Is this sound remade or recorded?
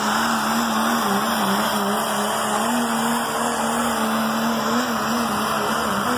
recorded